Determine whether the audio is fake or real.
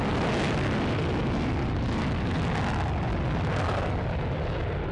real